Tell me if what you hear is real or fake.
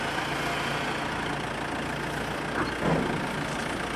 real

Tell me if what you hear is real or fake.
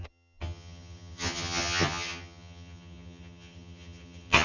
fake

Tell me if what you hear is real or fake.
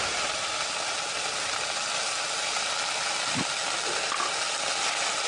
real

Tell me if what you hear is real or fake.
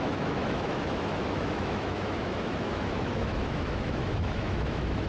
fake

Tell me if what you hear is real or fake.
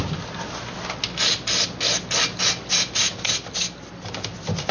real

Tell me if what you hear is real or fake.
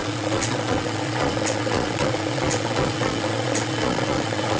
fake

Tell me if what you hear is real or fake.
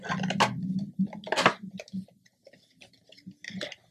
real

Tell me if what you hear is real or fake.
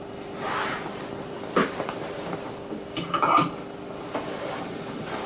real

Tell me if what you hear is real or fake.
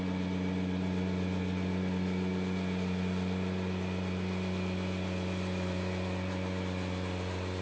real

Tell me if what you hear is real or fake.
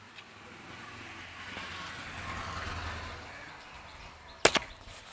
real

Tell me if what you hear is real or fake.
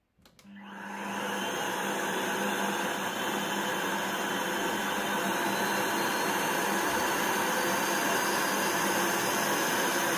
real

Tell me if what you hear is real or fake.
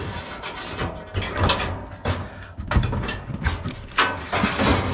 real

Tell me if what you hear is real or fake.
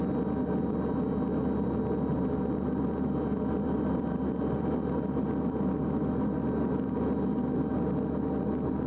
real